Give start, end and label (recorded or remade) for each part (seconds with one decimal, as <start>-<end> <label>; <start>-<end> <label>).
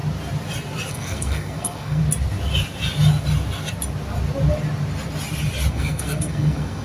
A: 0.0-0.9 recorded; 0.9-2.0 remade; 2.0-5.7 recorded; 5.7-6.8 remade